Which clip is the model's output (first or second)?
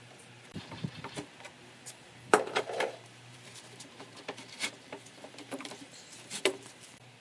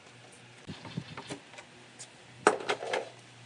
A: first